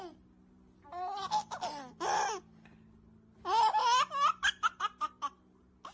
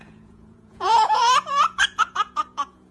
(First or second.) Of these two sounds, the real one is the first